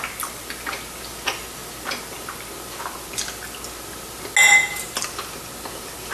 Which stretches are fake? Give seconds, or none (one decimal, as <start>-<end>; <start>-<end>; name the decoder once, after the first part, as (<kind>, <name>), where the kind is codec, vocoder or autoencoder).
none

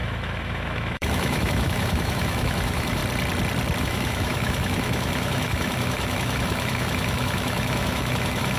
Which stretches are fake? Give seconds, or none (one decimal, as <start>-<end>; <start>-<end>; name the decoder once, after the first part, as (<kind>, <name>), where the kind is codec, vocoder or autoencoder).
0.0-3.0 (autoencoder, DAC-VAE); 3.8-8.6

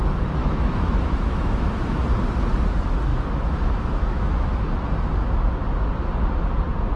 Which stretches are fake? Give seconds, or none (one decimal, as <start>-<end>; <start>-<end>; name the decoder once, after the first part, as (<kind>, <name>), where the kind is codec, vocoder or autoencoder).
0.4-2.0 (autoencoder, DAC-VAE); 3.1-4.6

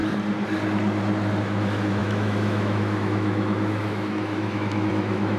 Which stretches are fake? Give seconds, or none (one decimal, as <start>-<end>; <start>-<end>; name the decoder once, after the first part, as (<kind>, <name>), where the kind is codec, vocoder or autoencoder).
1.4-5.4 (autoencoder, DAC-VAE)

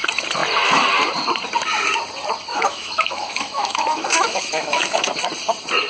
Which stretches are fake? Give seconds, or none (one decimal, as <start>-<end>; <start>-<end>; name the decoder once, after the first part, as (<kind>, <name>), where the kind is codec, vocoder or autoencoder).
2.5-5.1 (autoencoder, DAC-VAE)

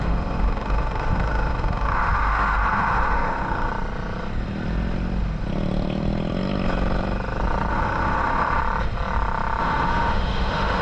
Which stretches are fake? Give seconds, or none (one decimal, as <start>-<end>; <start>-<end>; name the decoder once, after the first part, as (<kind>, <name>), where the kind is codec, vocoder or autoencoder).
0.0-3.7 (autoencoder, DAC-VAE); 7.7-8.6; 9.6-10.8